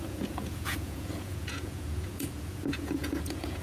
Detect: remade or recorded remade